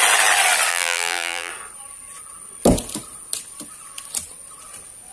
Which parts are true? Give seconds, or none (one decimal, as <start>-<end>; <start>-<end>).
0.0-0.7; 1.5-5.1